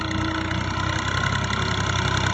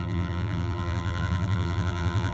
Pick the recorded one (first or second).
first